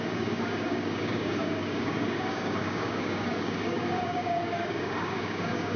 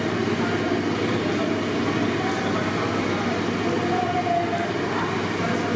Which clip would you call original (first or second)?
second